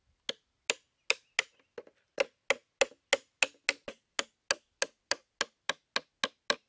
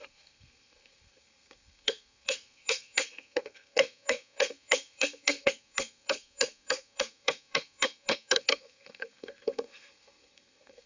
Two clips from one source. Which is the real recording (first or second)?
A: first